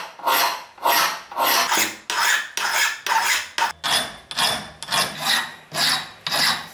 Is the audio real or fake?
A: real